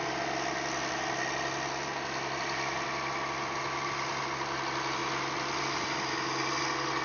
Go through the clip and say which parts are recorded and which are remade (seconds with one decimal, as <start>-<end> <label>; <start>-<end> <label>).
0.0-7.0 recorded